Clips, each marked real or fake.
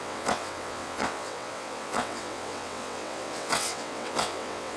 fake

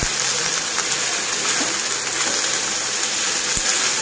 real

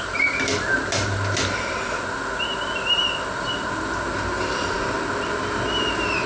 real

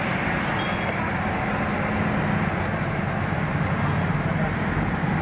real